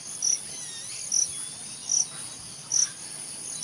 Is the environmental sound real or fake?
real